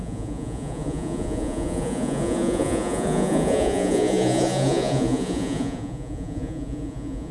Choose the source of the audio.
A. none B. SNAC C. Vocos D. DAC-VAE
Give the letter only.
C